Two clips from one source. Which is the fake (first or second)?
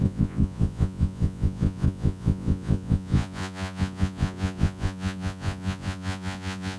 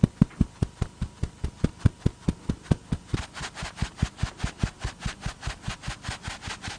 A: first